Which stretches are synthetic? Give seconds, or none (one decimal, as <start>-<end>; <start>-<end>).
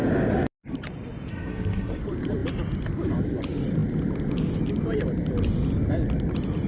1.3-2.0